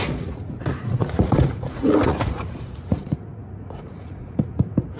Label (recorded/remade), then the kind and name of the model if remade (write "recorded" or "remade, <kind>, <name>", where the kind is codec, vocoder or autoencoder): remade, vocoder, Vocos